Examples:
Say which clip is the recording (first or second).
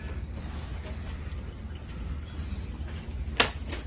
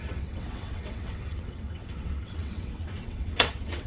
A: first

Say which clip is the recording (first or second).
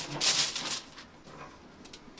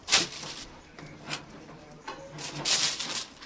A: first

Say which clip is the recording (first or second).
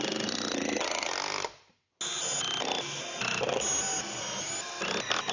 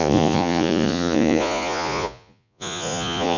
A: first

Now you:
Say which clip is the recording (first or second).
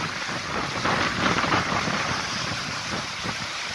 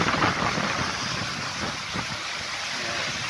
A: second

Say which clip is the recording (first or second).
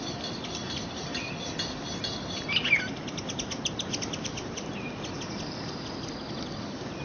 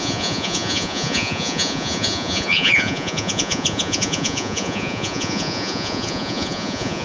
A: first